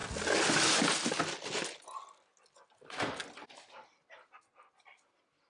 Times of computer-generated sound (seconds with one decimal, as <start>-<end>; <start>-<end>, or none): none